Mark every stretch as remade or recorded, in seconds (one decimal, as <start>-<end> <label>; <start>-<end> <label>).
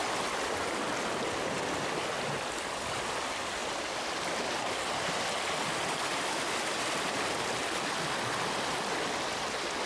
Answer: 0.0-9.9 recorded